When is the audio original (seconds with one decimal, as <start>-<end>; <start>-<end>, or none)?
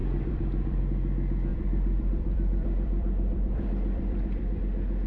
0.8-1.5; 4.6-5.1